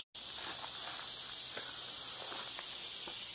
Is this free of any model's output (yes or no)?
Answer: yes